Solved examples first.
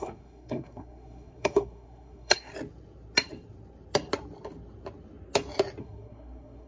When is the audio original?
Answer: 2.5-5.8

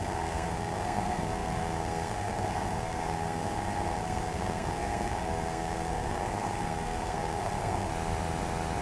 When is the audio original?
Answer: 7.9-8.8

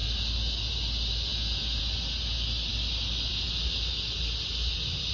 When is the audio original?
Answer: 0.0-5.1

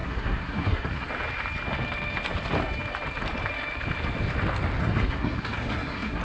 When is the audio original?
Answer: 1.1-4.8

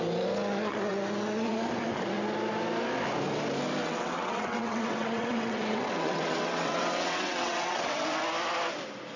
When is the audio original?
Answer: 0.0-3.8; 8.0-9.2

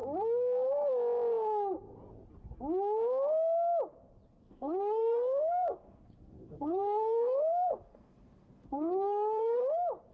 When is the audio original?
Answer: 0.0-4.3; 9.6-10.1